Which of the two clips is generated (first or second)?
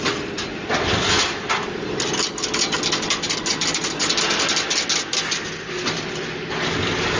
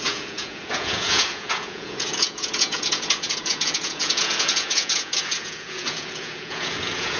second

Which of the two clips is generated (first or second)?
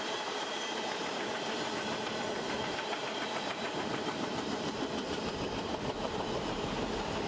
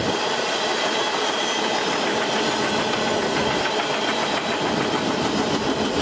first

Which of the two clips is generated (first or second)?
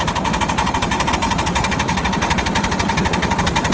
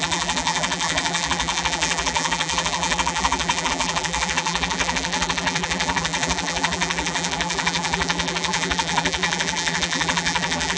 second